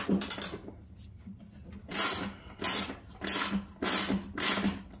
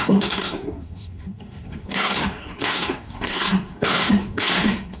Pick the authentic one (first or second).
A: first